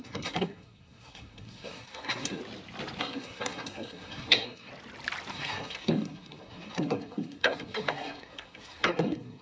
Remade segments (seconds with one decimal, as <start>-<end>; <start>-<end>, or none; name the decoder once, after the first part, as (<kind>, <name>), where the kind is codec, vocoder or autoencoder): 0.0-2.4 (codec, SNAC); 3.0-4.7; 5.3-9.4